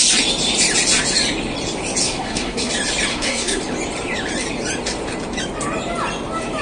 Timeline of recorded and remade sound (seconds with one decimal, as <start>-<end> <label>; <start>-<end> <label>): 0.0-2.0 recorded; 2.0-2.7 remade; 2.7-3.1 recorded; 3.1-3.6 remade; 3.6-6.6 recorded